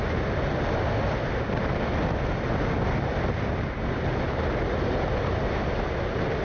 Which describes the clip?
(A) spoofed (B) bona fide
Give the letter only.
B